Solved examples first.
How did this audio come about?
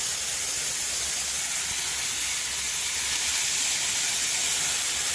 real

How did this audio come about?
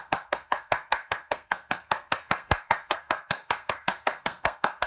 fake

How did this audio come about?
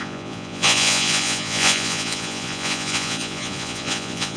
fake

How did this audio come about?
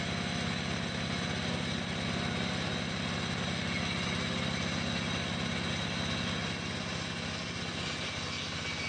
real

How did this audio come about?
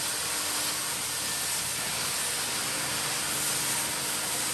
real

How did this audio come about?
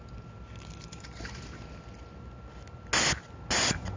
real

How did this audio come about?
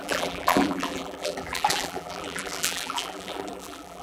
fake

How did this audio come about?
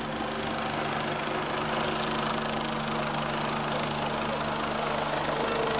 real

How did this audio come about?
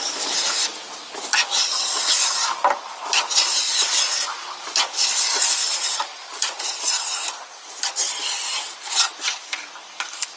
real